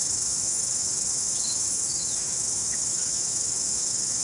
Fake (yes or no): yes